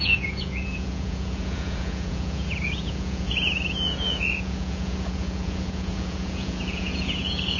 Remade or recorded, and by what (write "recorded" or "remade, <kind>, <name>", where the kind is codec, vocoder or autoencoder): remade, vocoder, Vocos